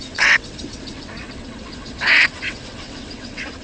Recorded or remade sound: remade